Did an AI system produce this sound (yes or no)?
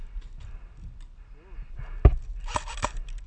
no